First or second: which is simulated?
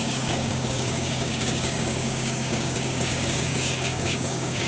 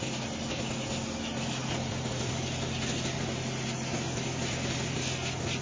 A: first